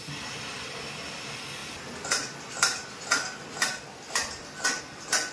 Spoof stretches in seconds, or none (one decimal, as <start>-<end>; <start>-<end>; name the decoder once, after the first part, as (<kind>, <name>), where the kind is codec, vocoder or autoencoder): none